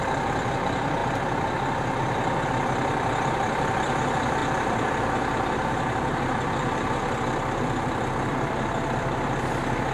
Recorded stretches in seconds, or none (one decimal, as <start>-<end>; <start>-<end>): 1.0-2.5